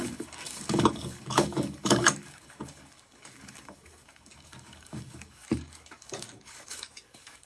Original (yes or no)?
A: no